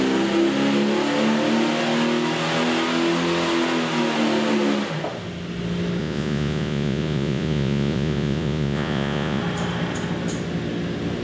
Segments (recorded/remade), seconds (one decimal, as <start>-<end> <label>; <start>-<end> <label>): 0.0-6.0 recorded; 6.0-9.4 remade; 9.4-11.2 recorded